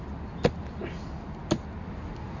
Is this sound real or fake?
real